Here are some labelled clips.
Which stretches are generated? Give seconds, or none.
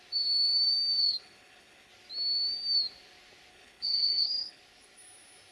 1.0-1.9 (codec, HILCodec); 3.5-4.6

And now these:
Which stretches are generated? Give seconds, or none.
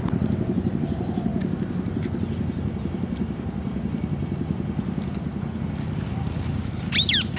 none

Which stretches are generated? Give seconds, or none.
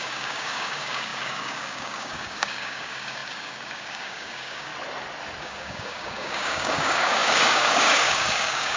0.0-4.7 (codec, DAC); 5.4-8.8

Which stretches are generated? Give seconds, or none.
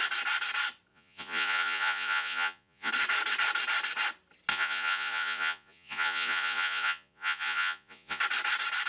0.9-2.9 (vocoder, Vocos); 4.5-8.2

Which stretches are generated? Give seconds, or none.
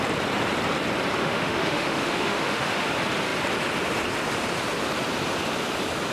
1.2-2.9 (autoencoder, DAC-VAE)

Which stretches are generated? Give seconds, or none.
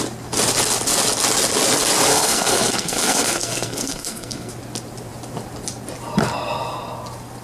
2.1-4.5 (codec, SNAC)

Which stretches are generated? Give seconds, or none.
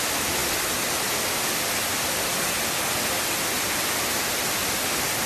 none